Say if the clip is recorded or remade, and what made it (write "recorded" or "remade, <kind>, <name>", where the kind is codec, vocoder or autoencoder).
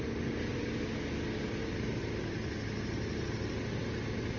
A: recorded